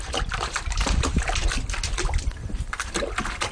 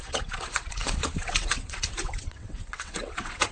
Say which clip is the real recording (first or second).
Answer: first